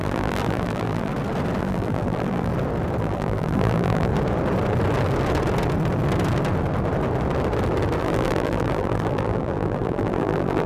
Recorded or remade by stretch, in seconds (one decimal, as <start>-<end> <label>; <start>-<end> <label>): 0.0-1.1 remade; 1.1-1.6 recorded; 1.6-2.5 remade; 2.5-3.0 recorded; 3.0-4.1 remade; 4.1-8.0 recorded; 8.0-10.7 remade